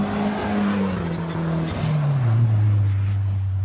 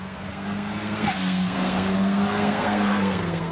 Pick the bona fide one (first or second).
first